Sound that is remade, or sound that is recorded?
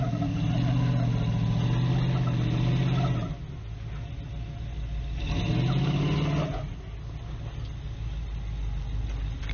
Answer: recorded